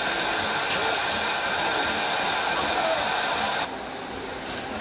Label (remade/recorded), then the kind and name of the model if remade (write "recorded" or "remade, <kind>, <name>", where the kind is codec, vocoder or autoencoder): recorded